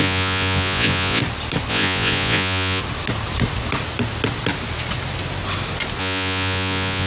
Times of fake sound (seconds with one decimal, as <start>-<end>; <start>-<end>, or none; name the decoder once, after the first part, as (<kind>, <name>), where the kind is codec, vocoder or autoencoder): 0.0-1.2 (vocoder, Vocos); 1.7-2.8; 6.0-7.1